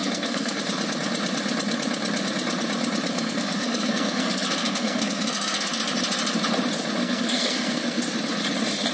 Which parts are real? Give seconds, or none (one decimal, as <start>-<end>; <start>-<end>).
0.6-3.1; 5.7-7.0; 8.0-8.9